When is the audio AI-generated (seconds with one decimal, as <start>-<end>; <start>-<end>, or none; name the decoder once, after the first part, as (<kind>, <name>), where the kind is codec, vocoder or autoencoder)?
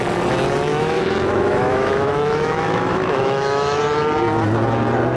0.7-3.8 (autoencoder, DAC-VAE)